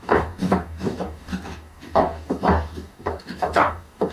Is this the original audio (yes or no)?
no